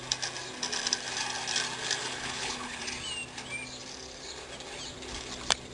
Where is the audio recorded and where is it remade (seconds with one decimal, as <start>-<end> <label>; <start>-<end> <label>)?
0.0-2.0 recorded; 2.0-2.8 remade; 2.8-5.7 recorded